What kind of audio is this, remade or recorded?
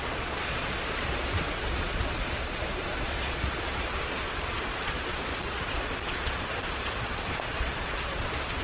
remade